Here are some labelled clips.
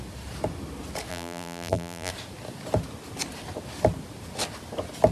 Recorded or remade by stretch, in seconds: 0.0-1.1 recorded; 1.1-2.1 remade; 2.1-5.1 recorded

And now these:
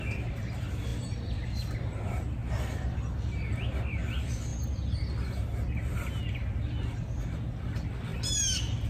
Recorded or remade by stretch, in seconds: 0.0-8.9 recorded

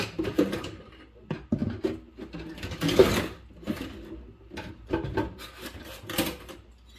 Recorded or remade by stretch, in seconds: 0.0-7.0 recorded

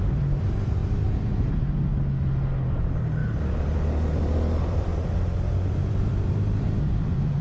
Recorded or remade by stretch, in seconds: 0.0-0.8 remade; 0.8-2.7 recorded; 2.7-3.2 remade; 3.2-4.2 recorded; 4.2-4.9 remade; 4.9-5.9 recorded; 5.9-7.4 remade

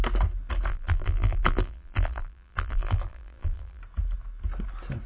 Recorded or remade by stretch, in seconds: 0.0-0.7 recorded; 0.7-3.8 remade; 3.8-5.1 recorded

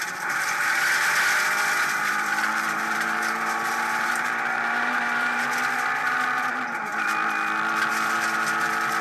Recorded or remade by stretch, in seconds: 0.0-2.5 recorded; 2.5-5.4 remade; 5.4-9.0 recorded

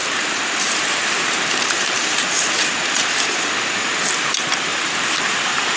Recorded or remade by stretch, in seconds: 0.0-3.5 remade; 3.5-4.7 recorded; 4.7-5.8 remade

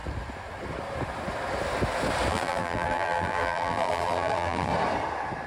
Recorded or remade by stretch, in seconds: 0.0-2.3 recorded; 2.3-4.7 remade; 4.7-5.5 recorded